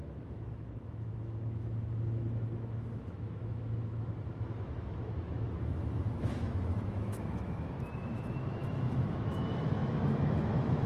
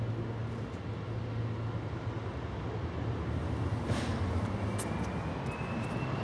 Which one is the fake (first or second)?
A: first